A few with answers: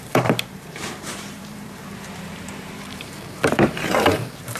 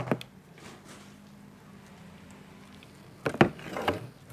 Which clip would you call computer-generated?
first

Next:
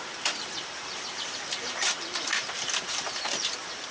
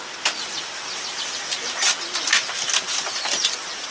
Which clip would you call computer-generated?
first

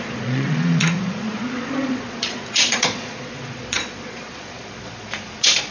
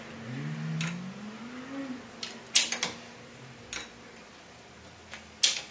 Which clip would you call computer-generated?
first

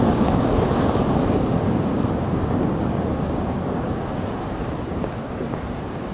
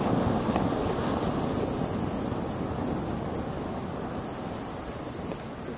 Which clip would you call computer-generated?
first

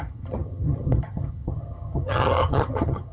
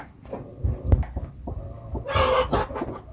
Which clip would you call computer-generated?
first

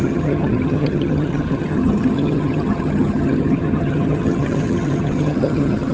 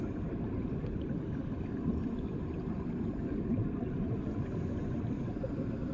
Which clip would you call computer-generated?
first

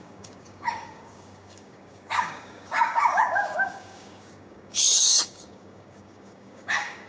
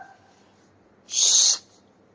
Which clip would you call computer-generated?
first